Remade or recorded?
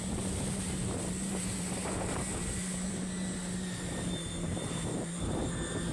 remade